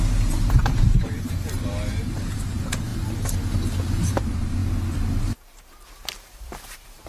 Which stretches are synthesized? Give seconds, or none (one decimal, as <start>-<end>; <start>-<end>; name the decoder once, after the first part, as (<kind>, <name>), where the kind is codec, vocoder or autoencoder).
0.0-2.9 (vocoder, BigVGAN v2); 4.0-4.6; 5.2-7.1